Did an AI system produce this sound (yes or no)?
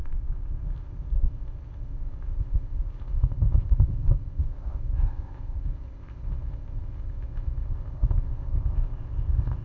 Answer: yes